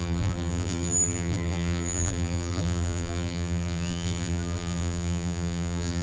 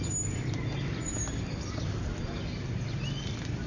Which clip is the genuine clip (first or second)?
second